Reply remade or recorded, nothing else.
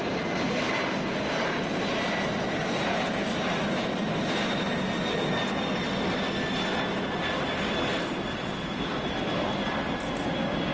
recorded